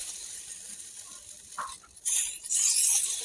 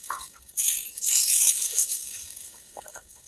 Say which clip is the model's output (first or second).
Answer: second